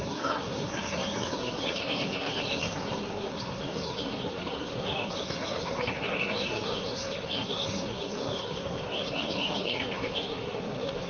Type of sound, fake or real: fake